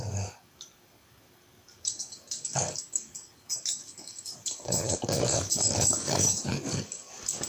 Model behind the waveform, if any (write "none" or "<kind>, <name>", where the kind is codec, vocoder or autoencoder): codec, DAC